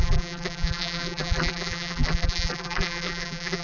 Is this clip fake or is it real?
fake